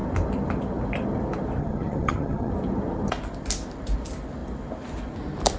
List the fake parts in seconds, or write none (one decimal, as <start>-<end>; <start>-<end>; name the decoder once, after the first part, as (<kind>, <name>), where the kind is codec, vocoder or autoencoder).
1.6-2.5 (vocoder, HiFi-GAN)